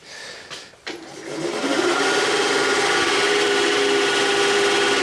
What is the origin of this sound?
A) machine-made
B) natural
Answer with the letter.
B